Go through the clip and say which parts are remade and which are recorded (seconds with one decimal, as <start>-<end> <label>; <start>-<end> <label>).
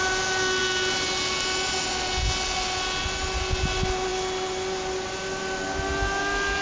0.0-6.6 recorded